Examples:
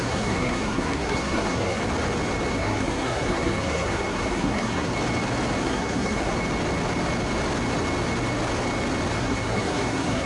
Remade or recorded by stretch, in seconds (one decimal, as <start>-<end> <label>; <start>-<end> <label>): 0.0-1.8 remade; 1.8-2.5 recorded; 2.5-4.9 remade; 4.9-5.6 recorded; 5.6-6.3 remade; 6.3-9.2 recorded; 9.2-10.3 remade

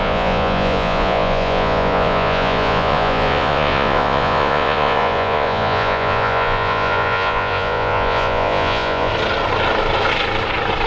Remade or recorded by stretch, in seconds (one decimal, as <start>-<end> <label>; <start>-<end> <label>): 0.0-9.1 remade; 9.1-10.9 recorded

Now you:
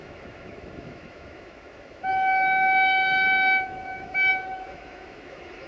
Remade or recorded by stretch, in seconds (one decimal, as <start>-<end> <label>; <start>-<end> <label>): 0.0-5.7 remade